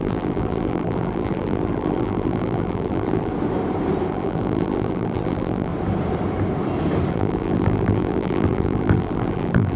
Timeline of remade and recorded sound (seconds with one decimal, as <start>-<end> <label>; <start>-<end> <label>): 0.0-3.3 remade; 3.3-4.1 recorded; 4.1-5.7 remade; 5.7-7.1 recorded; 7.1-9.8 remade